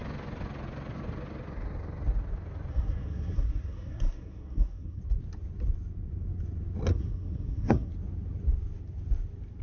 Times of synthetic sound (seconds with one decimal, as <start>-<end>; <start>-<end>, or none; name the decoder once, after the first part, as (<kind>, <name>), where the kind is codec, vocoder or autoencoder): 2.7-5.0 (codec, SNAC); 6.9-7.9